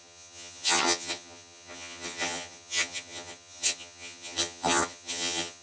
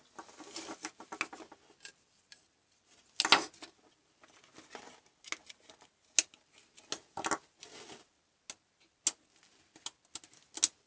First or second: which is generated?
first